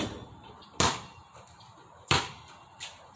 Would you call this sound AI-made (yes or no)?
no